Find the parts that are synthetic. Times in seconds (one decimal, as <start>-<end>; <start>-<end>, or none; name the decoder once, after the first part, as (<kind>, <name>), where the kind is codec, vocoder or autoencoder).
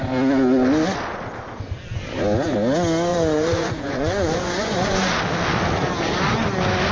3.1-5.1 (vocoder, Vocos)